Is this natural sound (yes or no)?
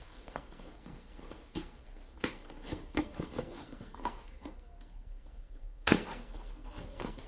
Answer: no